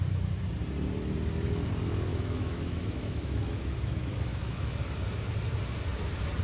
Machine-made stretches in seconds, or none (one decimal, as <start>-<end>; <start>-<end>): 2.1-4.8